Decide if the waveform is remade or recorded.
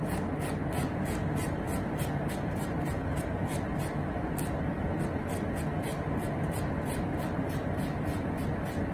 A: recorded